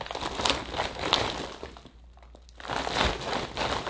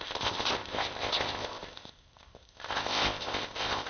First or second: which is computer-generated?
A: second